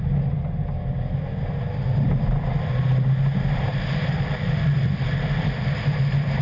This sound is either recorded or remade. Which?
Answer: recorded